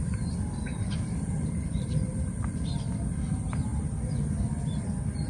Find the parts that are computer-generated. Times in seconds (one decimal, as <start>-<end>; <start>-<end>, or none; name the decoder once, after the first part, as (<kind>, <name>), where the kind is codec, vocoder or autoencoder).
0.7-2.2 (vocoder, BigVGAN v2)